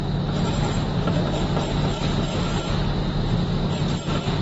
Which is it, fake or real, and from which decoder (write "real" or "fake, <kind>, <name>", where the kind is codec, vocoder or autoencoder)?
real